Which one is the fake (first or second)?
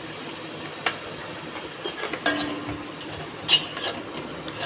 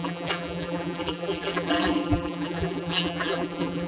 second